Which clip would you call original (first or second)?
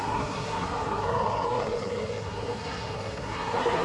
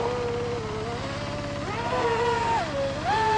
second